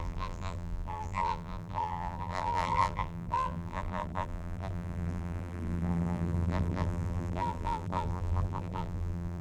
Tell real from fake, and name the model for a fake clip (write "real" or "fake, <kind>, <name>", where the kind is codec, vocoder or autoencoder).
fake, vocoder, BigVGAN v2